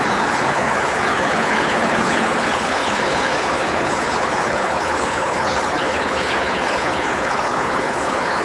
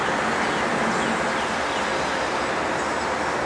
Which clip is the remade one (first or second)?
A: first